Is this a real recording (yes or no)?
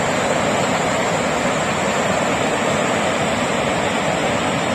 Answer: yes